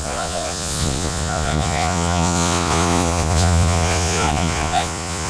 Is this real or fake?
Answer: fake